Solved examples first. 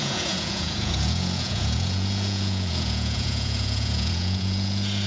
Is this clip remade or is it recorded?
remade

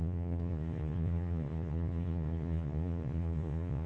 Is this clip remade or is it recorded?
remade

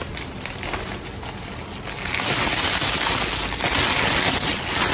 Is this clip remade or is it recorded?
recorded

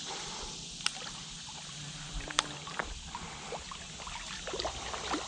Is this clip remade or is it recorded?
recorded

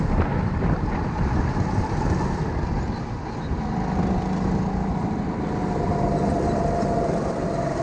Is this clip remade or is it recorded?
recorded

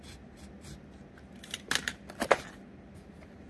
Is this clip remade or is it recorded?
recorded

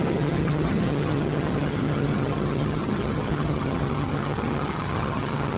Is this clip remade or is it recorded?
remade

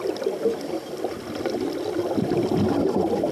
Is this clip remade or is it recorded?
recorded